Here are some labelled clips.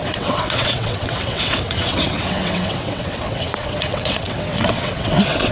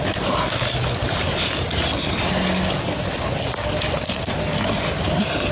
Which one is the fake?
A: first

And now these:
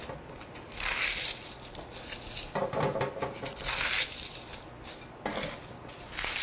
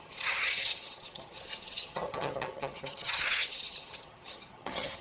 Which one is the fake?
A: second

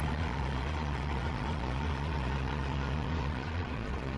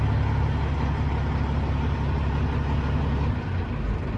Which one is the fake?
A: first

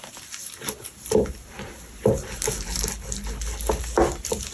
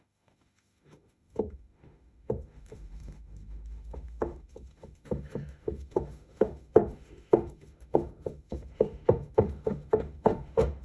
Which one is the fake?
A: second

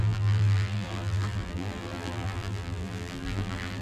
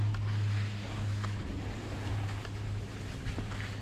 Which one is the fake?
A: first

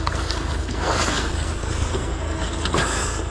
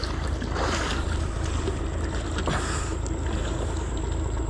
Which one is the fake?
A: first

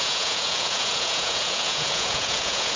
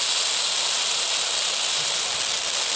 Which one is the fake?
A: first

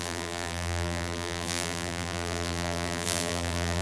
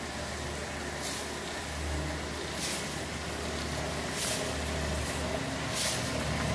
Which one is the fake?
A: first